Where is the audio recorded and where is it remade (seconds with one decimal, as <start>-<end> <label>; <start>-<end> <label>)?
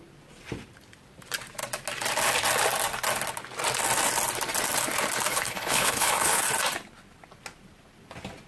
0.0-5.3 recorded; 5.3-6.4 remade; 6.4-8.5 recorded